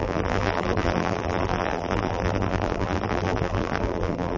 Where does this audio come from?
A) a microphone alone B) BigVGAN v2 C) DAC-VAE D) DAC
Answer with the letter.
B